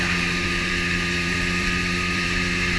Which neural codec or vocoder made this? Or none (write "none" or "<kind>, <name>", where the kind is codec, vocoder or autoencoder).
vocoder, BigVGAN v2